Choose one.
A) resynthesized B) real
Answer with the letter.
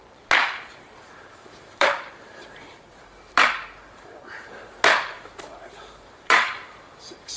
A